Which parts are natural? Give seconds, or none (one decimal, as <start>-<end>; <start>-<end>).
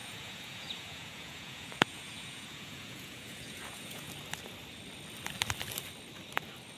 4.1-6.8